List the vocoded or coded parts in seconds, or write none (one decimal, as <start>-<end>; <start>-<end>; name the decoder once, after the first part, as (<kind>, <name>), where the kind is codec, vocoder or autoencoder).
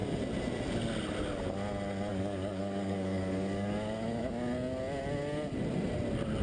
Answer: 2.1-4.5 (codec, DAC)